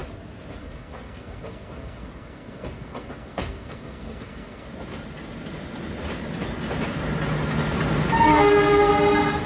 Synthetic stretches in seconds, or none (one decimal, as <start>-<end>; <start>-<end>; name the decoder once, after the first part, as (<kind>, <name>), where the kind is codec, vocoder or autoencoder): 0.6-4.7 (codec, SNAC); 8.3-8.9

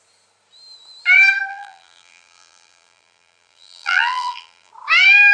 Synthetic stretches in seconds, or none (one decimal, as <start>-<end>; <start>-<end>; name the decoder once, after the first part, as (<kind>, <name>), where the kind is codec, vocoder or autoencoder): 1.5-4.7 (vocoder, BigVGAN v2)